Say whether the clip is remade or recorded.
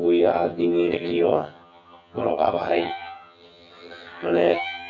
remade